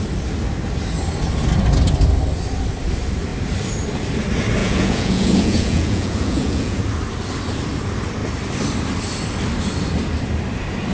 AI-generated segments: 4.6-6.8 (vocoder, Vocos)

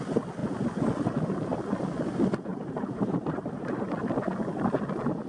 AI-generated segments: 2.5-3.9 (vocoder, BigVGAN v2)

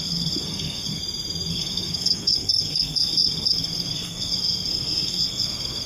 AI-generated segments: 0.0-1.0 (codec, SNAC); 1.5-5.9

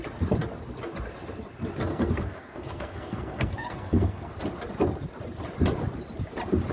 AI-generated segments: 1.9-4.3 (codec, SNAC)

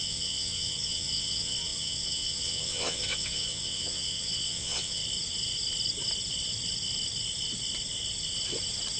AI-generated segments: 0.0-5.0 (vocoder, WaveNeXt)

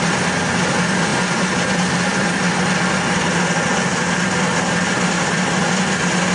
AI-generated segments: none